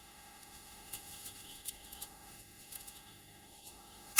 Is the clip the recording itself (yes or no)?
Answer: no